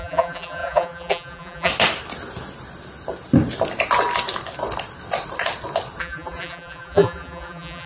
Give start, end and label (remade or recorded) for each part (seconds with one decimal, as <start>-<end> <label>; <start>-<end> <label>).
0.0-1.7 remade; 1.7-6.0 recorded; 6.0-7.9 remade